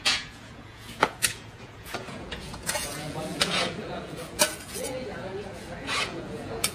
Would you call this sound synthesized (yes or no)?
yes